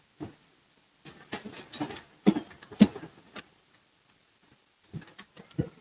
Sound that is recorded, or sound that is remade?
recorded